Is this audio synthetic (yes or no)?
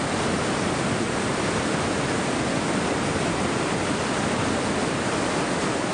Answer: no